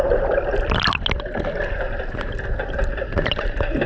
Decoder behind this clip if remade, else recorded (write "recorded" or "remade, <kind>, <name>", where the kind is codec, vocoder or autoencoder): recorded